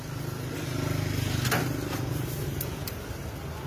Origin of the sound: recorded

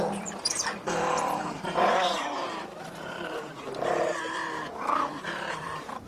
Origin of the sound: remade